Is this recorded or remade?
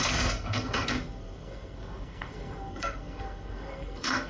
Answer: remade